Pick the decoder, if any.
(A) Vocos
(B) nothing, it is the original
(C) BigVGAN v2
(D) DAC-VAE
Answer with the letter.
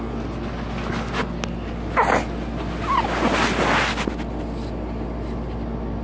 B